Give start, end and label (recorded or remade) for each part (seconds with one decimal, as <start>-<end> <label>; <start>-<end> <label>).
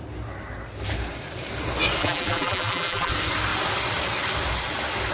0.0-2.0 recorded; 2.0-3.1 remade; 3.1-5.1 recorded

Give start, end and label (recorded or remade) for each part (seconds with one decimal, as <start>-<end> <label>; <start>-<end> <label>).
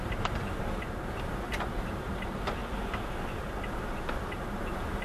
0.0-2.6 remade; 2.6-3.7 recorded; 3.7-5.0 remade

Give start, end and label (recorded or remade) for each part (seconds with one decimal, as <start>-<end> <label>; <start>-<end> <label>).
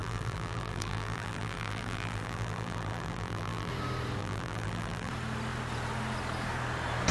0.0-3.7 remade; 3.7-4.2 recorded; 4.2-5.1 remade; 5.1-7.1 recorded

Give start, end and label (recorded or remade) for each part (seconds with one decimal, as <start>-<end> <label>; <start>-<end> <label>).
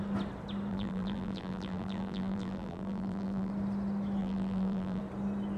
0.0-0.7 recorded; 0.7-3.5 remade; 3.5-4.2 recorded; 4.2-5.0 remade; 5.0-5.6 recorded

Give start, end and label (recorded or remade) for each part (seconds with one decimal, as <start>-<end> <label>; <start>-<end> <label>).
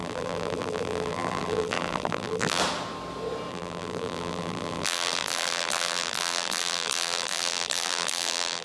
0.0-2.6 remade; 2.6-3.5 recorded; 3.5-8.6 remade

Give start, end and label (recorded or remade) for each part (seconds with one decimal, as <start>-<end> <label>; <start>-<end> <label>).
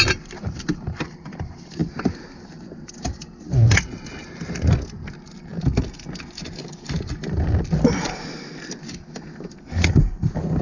0.0-1.8 recorded; 1.8-2.9 remade; 2.9-10.6 recorded